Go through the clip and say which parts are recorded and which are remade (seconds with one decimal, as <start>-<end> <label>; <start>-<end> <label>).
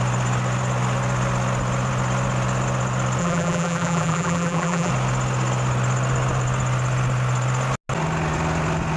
0.0-3.2 recorded; 3.2-4.9 remade; 4.9-9.0 recorded